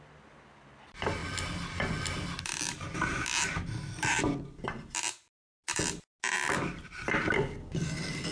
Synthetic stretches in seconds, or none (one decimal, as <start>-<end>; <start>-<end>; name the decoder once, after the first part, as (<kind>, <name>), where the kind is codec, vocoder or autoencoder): none